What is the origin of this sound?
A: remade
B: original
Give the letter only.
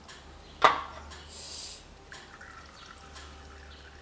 B